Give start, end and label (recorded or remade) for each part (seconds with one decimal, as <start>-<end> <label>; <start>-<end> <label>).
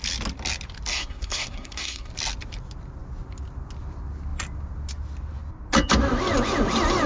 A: 0.0-0.9 recorded; 0.9-2.1 remade; 2.1-7.1 recorded